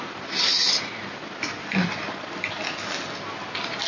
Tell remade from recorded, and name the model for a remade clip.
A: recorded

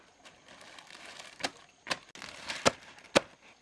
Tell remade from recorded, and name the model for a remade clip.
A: recorded